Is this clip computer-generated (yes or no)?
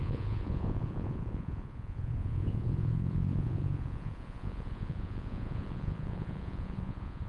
yes